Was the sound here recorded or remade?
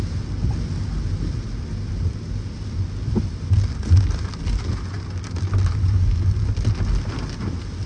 recorded